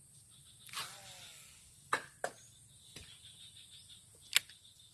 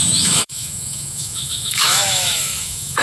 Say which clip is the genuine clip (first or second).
first